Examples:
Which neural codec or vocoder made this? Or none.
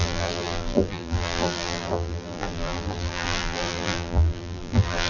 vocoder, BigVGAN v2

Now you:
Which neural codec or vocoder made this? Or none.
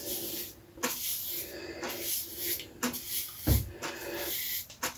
none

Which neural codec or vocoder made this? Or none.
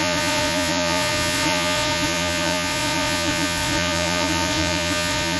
vocoder, Vocos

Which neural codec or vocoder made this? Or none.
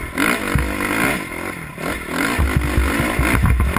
none